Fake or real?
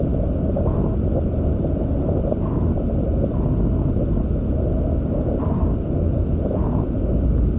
real